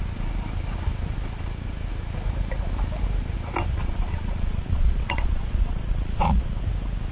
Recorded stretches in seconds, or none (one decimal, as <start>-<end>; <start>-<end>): 0.0-3.7; 6.6-7.1